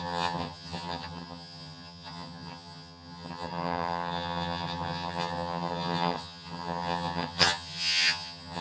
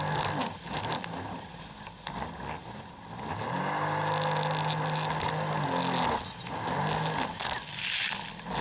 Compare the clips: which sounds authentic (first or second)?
second